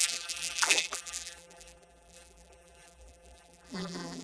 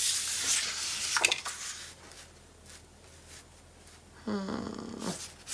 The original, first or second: second